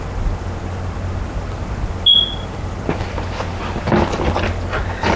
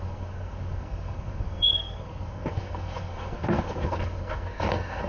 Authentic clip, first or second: first